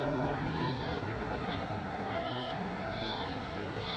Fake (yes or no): yes